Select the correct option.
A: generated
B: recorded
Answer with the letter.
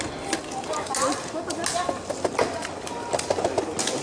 B